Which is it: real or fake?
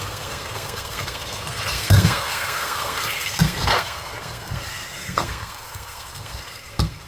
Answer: fake